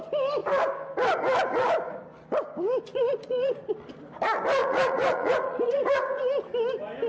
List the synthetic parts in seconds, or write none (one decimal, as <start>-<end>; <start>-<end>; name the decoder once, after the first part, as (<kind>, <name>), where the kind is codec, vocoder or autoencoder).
2.9-3.7 (vocoder, Vocos); 4.6-6.3